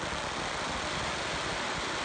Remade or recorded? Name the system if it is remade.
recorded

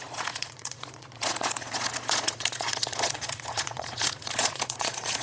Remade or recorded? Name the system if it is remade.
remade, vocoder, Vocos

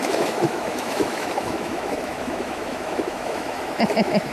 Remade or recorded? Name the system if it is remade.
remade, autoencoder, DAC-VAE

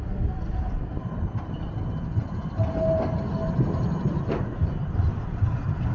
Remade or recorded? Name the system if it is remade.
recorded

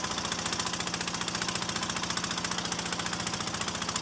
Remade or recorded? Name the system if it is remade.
recorded